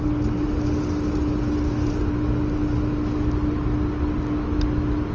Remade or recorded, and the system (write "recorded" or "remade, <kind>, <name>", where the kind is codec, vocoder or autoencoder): recorded